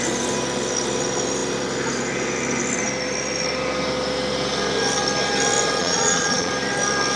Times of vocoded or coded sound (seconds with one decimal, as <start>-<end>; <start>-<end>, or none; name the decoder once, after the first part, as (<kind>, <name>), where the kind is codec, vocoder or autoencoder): 5.8-6.5 (vocoder, Vocos)